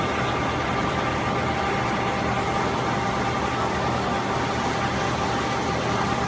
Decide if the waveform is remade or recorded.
recorded